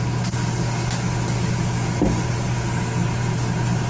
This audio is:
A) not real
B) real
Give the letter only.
B